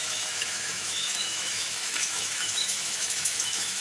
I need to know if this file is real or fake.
fake